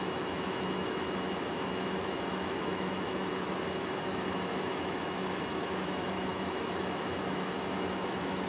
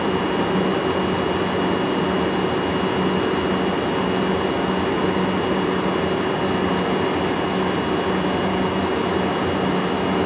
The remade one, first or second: first